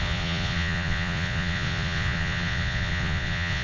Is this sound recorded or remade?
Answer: remade